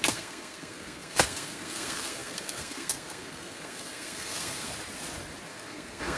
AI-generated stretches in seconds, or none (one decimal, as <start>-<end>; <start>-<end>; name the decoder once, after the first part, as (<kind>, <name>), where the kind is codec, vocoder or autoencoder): 0.0-4.7 (codec, SNAC); 5.5-6.2